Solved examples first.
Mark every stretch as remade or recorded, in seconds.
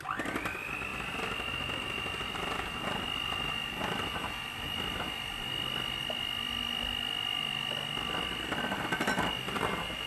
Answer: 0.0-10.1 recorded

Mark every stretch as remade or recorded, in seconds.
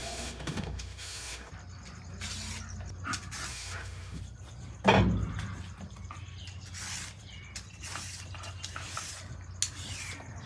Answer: 0.0-1.5 remade; 1.5-3.5 recorded; 3.5-4.2 remade; 4.2-10.5 recorded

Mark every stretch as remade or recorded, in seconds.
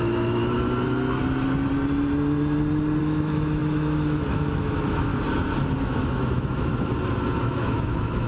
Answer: 0.0-0.4 remade; 0.4-3.0 recorded; 3.0-5.1 remade; 5.1-5.8 recorded; 5.8-6.7 remade; 6.7-7.4 recorded; 7.4-8.3 remade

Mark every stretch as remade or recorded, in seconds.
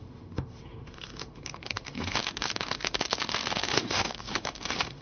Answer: 0.0-5.0 remade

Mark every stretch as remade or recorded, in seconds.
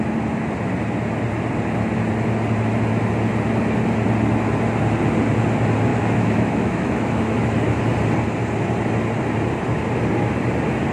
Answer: 0.0-5.9 recorded; 5.9-7.8 remade; 7.8-10.9 recorded